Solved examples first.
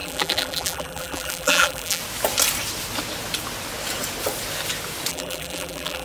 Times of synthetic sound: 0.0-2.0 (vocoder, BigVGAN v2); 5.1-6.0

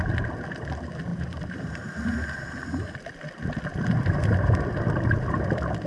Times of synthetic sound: 1.1-1.9 (vocoder, BigVGAN v2)

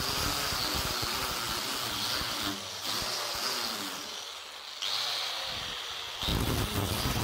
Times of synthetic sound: none

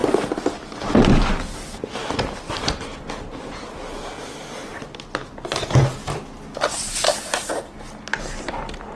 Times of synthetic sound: 2.0-3.1 (vocoder, BigVGAN v2)

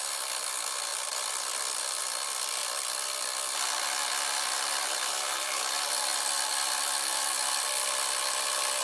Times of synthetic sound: 0.9-2.0 (vocoder, BigVGAN v2); 2.6-5.6

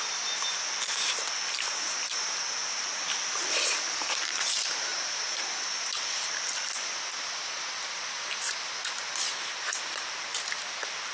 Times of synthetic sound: 4.9-5.4 (vocoder, BigVGAN v2)

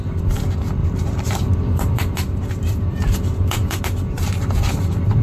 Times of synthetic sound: 0.8-3.8 (vocoder, BigVGAN v2)